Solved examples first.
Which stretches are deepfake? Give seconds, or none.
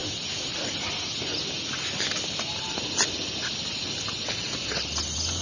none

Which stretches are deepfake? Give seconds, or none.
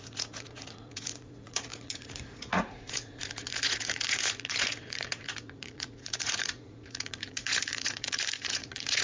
0.0-9.0 (vocoder, Vocos)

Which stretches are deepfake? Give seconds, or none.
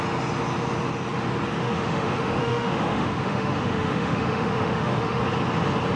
1.6-5.2 (autoencoder, DAC-VAE)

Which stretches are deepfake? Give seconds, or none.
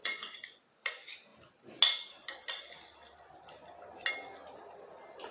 0.0-0.6 (vocoder, Vocos)